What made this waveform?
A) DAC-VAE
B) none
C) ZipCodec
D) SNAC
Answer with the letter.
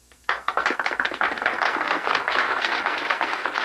D